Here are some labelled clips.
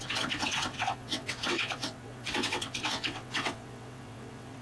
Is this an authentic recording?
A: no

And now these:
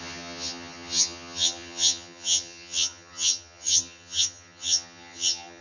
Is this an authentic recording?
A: no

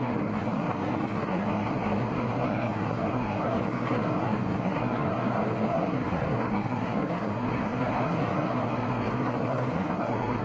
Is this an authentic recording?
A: no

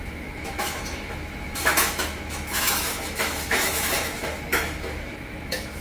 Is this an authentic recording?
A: no